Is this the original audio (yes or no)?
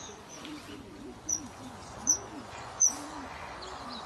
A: no